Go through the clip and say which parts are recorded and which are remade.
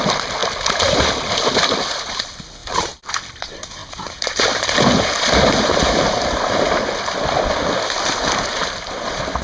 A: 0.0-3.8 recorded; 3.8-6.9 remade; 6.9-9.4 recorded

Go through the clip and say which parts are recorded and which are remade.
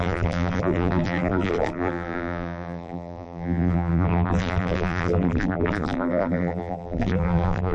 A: 0.0-7.7 remade